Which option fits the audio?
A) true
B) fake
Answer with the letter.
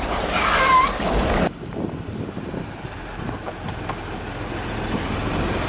A